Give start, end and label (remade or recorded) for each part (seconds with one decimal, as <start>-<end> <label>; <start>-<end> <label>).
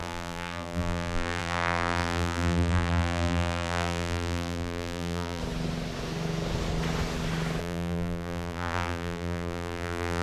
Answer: 0.0-5.4 remade; 5.4-7.6 recorded; 7.6-10.2 remade